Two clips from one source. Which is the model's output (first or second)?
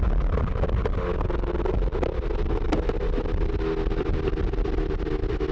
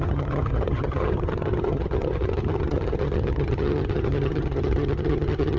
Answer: second